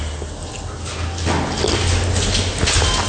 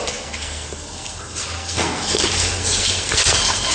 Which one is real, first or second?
first